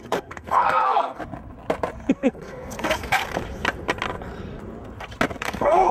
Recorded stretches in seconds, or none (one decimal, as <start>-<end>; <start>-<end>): 1.2-2.1; 3.2-5.4